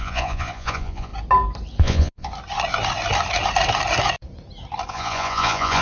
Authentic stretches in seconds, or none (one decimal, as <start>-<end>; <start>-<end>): 1.1-1.8; 2.3-4.9

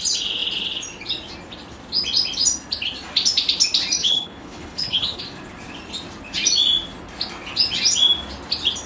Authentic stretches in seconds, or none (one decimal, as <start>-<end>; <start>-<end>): 0.0-4.0; 5.2-8.9

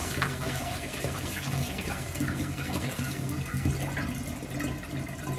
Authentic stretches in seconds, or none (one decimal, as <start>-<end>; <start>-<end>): 3.7-5.4

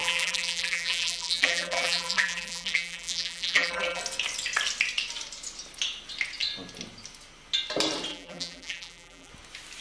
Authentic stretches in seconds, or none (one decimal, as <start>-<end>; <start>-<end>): 4.0-8.1; 9.3-9.8

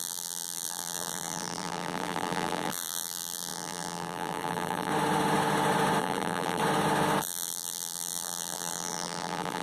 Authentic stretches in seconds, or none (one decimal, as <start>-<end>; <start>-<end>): 4.9-6.0; 6.6-7.2

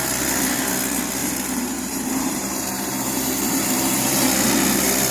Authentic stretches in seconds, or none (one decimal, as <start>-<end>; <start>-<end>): 0.0-1.2; 4.3-5.1